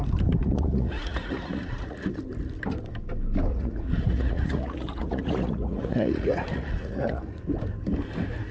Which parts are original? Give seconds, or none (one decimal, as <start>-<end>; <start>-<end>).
0.0-0.4; 2.1-3.5; 7.5-8.5